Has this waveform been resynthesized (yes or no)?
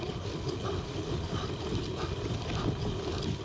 no